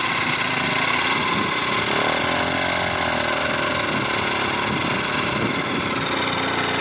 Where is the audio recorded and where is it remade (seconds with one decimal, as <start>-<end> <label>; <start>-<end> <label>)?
0.0-6.8 recorded

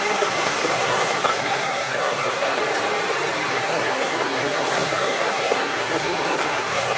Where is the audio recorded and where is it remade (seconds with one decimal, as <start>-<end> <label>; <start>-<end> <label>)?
0.0-2.6 remade; 2.6-3.5 recorded; 3.5-7.0 remade